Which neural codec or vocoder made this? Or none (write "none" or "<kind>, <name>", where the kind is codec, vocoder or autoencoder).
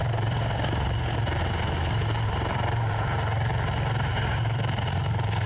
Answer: vocoder, BigVGAN v2